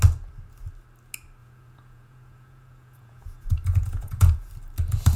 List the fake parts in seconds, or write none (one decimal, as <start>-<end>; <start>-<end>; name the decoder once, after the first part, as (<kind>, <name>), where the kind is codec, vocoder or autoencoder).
1.4-4.5 (vocoder, Vocos)